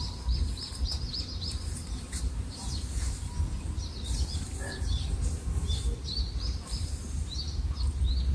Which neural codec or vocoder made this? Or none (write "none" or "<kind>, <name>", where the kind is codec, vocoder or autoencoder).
vocoder, BigVGAN v2